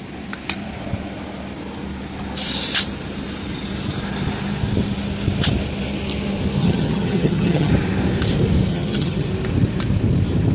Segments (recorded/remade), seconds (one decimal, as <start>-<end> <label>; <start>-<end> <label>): 0.0-6.6 recorded; 6.6-7.7 remade; 7.7-8.7 recorded; 8.7-9.3 remade; 9.3-10.5 recorded